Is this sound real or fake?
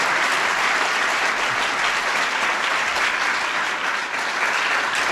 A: real